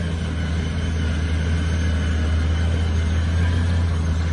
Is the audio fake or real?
real